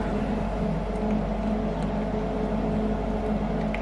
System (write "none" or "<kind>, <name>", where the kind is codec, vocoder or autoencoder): none